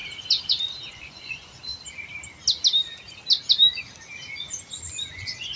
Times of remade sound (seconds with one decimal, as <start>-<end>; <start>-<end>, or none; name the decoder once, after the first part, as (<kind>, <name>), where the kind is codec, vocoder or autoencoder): 0.9-1.7 (vocoder, Vocos); 5.1-5.6